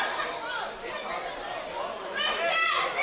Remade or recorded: recorded